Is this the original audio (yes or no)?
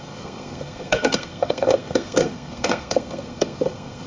no